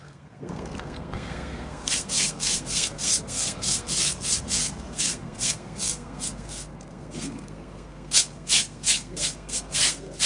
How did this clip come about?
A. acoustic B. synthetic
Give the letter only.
B